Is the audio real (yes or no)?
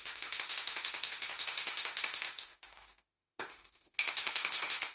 no